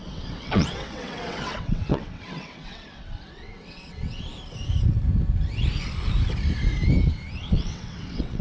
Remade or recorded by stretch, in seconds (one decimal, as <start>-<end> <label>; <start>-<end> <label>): 0.0-4.3 remade; 4.3-7.4 recorded; 7.4-8.4 remade